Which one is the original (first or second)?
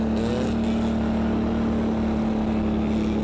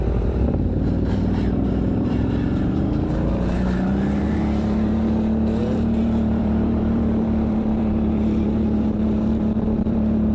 first